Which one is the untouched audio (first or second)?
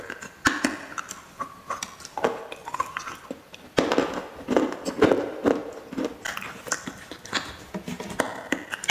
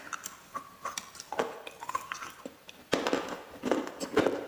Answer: first